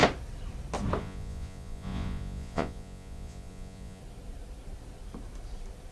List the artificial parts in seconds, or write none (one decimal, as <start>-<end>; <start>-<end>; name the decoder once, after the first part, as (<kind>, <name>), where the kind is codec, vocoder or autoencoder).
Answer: 1.0-4.0 (vocoder, Vocos)